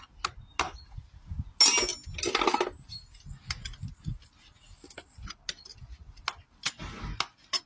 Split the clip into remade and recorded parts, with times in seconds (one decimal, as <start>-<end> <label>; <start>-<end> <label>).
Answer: 0.0-5.7 recorded; 5.7-6.2 remade; 6.2-7.7 recorded